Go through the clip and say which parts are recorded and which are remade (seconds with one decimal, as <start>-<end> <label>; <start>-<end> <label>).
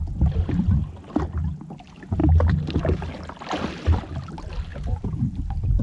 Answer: 0.0-4.7 recorded; 4.7-5.8 remade